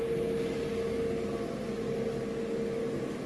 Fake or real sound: real